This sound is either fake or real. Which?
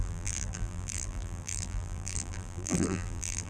fake